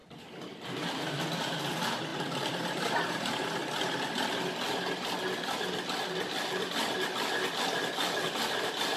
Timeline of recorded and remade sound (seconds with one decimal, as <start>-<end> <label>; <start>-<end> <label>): 0.0-1.4 recorded; 1.4-3.6 remade; 3.6-8.3 recorded; 8.3-9.0 remade